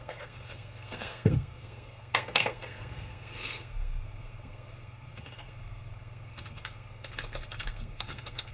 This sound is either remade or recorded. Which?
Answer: remade